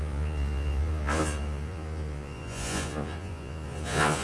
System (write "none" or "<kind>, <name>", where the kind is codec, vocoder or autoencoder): vocoder, Vocos